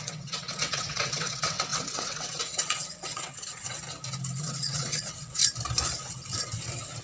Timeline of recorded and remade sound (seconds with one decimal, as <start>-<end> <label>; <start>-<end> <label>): 0.0-3.8 remade; 3.8-4.4 recorded; 4.4-5.4 remade; 5.4-7.0 recorded